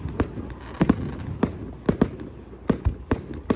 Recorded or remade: recorded